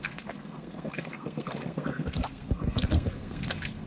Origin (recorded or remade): remade